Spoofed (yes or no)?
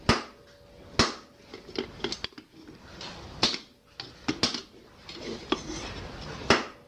no